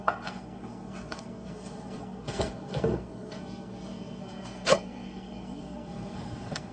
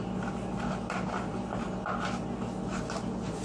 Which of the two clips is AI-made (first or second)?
first